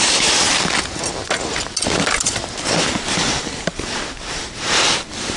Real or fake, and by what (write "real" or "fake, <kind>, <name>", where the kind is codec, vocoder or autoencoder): real